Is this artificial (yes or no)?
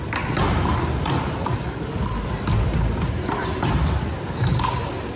no